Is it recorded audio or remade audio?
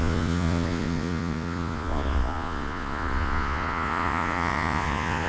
remade